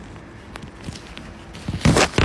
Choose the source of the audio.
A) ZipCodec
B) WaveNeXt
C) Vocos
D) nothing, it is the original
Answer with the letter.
D